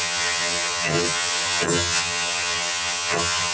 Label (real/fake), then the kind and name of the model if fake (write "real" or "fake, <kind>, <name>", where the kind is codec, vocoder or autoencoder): fake, vocoder, HiFi-GAN